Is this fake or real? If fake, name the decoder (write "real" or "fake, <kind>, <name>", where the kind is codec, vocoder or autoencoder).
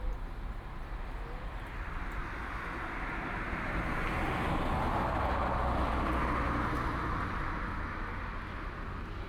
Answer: real